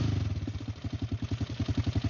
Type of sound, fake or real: real